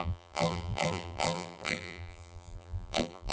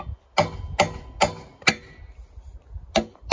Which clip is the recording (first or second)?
second